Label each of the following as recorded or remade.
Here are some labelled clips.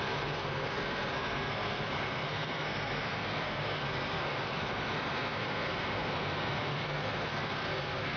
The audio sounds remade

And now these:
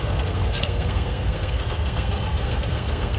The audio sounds remade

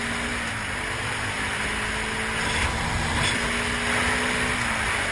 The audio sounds recorded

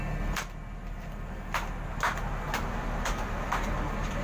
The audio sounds recorded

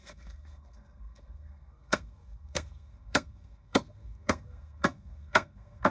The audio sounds remade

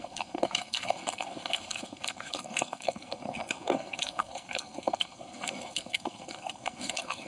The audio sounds remade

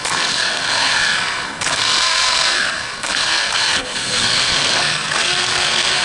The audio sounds remade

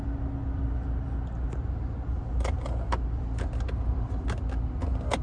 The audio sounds recorded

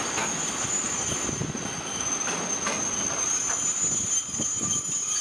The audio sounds recorded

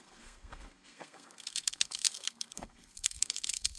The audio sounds remade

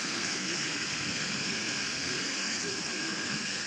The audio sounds remade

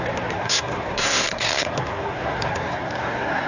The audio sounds remade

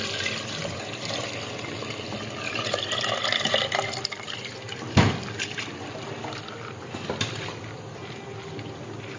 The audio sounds recorded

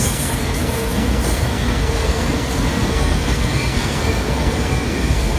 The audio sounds remade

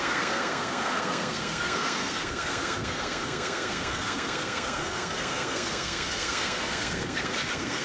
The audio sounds remade